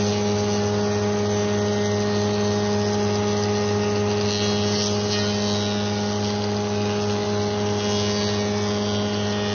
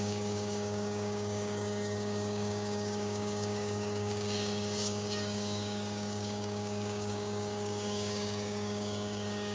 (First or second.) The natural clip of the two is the first